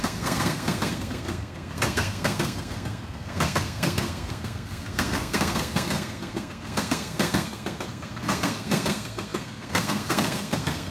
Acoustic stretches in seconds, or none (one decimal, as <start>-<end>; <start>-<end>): none